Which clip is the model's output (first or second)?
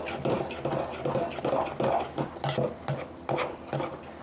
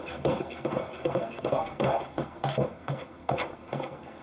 second